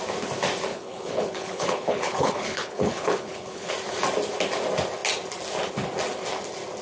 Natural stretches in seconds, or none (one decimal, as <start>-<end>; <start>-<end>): 0.0-0.7; 3.7-6.8